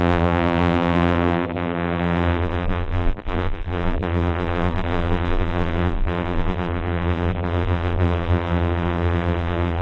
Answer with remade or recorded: remade